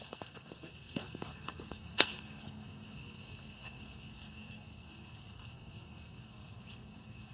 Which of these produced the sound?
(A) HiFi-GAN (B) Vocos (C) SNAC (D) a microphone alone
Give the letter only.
C